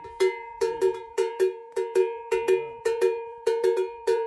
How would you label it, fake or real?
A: fake